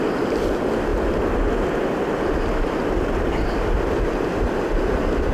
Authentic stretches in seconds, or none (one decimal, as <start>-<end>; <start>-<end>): 0.0-5.3